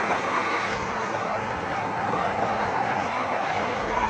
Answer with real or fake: fake